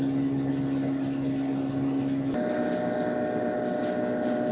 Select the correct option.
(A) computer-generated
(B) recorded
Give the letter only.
B